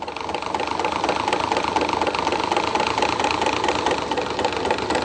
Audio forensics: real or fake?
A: real